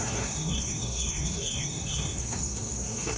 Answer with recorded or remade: remade